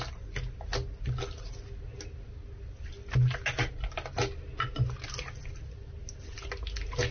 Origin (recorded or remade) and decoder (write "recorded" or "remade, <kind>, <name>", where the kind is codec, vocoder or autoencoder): recorded